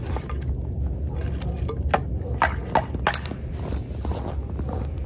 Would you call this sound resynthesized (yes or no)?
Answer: no